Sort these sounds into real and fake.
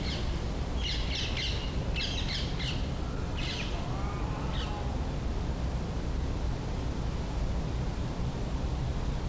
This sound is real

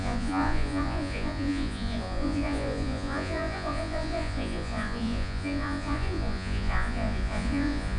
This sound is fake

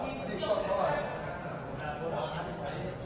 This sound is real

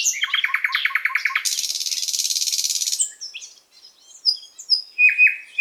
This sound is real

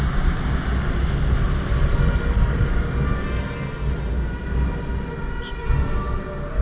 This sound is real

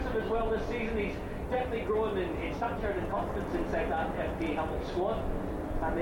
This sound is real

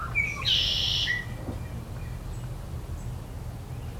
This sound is real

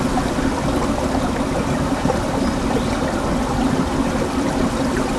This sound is real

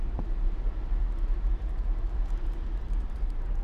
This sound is fake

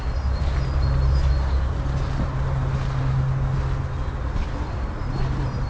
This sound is real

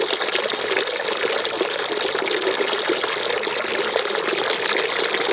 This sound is real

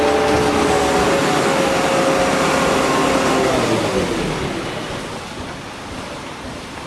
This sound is real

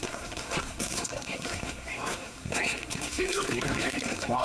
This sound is fake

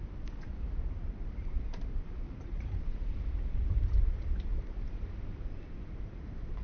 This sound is fake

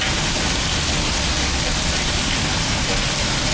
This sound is real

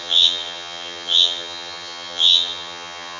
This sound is fake